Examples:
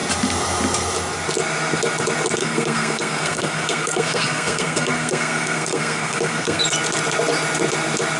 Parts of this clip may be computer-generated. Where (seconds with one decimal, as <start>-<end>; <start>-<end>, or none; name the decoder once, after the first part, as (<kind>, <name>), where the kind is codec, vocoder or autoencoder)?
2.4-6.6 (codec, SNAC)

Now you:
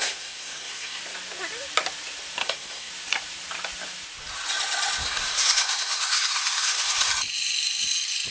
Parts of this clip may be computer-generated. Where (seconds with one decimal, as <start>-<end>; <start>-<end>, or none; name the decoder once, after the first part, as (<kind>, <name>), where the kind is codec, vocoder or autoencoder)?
0.0-1.0 (codec, SNAC); 2.4-2.9; 5.0-7.1

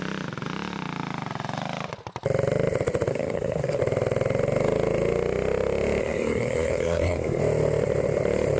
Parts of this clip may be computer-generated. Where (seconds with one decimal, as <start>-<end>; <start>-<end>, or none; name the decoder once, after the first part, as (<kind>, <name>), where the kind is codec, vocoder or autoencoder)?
3.1-3.8 (codec, SNAC); 6.0-7.4

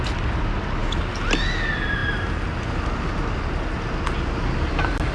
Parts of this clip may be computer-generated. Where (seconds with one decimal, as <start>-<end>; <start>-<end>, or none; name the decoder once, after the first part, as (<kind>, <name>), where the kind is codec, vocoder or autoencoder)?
none

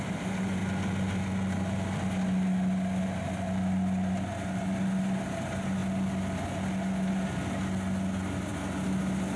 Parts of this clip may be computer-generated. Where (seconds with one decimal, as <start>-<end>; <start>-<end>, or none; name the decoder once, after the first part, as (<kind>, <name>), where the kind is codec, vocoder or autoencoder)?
none

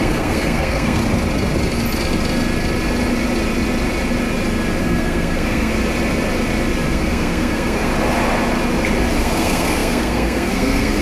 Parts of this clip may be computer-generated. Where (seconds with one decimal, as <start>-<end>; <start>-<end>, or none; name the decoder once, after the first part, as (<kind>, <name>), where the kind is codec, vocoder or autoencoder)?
0.0-1.0 (codec, SNAC); 4.8-5.7; 6.9-7.9; 9.2-11.0